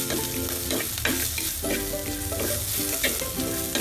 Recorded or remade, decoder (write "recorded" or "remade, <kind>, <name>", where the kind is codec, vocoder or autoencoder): recorded